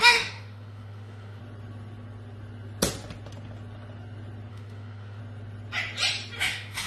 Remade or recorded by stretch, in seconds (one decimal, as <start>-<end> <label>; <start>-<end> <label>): 0.0-1.4 remade; 1.4-4.5 recorded; 4.5-5.2 remade; 5.2-6.4 recorded; 6.4-6.9 remade